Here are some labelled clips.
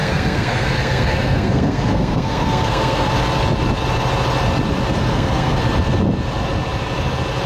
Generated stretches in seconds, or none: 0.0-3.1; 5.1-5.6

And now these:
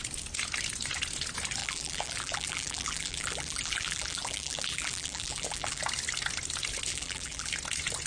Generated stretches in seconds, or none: 1.6-5.8; 6.9-7.5